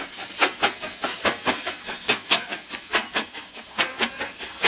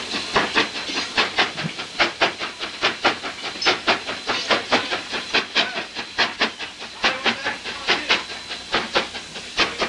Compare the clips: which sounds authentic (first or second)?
second